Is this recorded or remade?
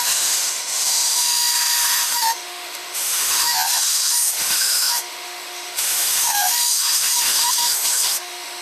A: remade